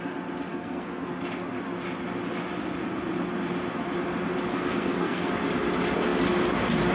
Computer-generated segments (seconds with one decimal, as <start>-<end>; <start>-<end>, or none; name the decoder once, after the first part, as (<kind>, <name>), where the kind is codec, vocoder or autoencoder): 0.5-1.1 (codec, SNAC); 4.5-5.3